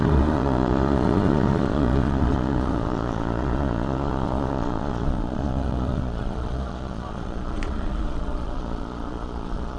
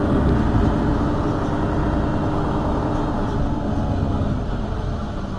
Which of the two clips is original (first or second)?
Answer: second